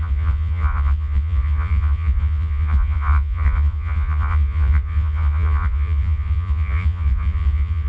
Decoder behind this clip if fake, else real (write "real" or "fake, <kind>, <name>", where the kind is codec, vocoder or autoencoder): fake, vocoder, Vocos